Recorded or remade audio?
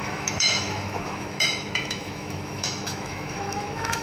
remade